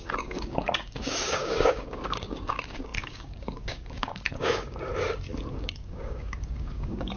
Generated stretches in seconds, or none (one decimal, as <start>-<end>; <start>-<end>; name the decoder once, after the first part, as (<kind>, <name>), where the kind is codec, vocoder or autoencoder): 0.0-4.9 (codec, DAC); 5.5-7.2